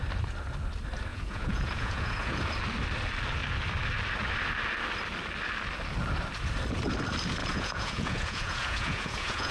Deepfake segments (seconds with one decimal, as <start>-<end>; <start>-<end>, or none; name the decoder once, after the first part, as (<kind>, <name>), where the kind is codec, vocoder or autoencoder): 1.1-2.5 (vocoder, Vocos); 7.4-9.5